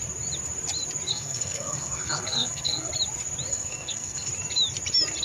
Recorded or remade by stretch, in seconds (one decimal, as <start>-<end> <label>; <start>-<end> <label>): 0.0-1.1 recorded; 1.1-2.9 remade; 2.9-3.5 recorded; 3.5-4.3 remade; 4.3-5.2 recorded